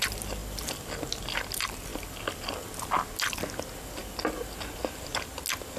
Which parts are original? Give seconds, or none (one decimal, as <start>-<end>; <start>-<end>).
0.0-5.8